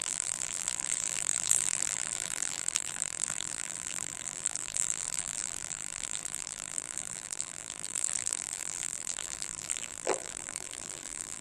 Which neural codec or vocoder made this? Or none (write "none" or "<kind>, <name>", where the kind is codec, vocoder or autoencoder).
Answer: vocoder, BigVGAN v2